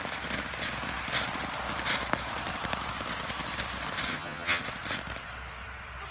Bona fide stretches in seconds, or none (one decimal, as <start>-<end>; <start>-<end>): 0.0-4.1; 4.6-6.1